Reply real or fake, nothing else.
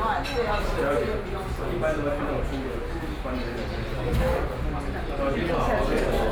real